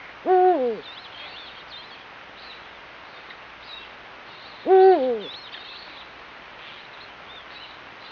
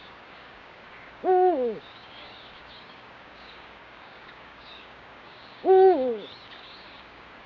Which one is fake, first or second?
second